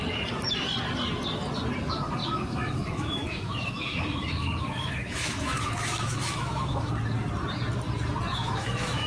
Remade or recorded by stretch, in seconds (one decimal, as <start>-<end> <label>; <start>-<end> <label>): 0.0-2.2 recorded; 2.2-6.9 remade; 6.9-8.3 recorded; 8.3-9.1 remade